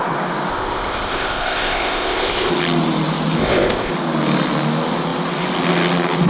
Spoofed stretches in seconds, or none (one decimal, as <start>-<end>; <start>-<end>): 0.5-2.5; 3.4-3.9